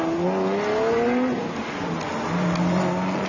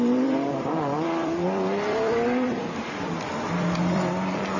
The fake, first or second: second